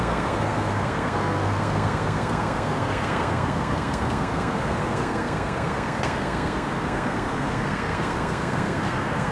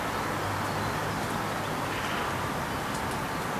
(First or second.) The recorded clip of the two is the second